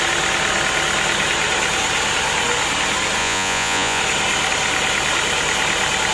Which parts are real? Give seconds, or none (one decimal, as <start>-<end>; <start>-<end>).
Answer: 0.0-3.2; 4.0-6.1